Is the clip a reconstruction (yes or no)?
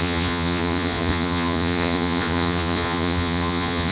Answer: yes